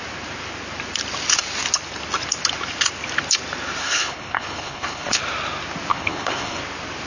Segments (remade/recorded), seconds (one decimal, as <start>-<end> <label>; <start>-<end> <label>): 0.0-3.8 recorded; 3.8-5.2 remade; 5.2-5.9 recorded; 5.9-6.6 remade; 6.6-7.1 recorded